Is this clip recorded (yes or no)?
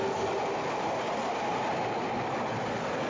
yes